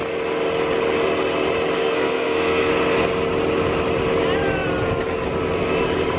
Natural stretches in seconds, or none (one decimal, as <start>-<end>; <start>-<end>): 0.0-1.8; 2.7-6.2